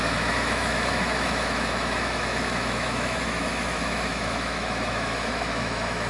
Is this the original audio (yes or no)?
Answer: no